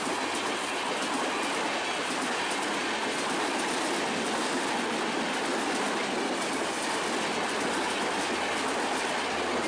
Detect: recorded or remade recorded